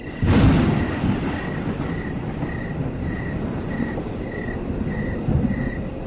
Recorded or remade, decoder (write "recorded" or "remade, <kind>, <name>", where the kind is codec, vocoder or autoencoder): recorded